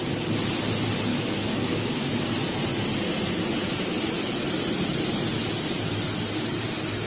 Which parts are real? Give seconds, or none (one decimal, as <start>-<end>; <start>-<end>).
0.0-1.1; 2.1-7.1